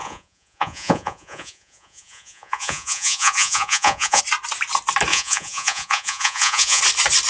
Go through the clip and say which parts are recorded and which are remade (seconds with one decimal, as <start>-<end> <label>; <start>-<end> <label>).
0.0-4.2 remade; 4.2-5.1 recorded; 5.1-6.8 remade; 6.8-7.3 recorded